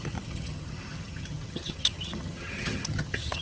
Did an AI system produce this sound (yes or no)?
yes